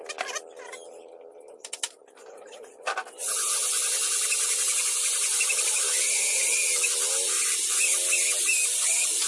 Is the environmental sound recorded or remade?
recorded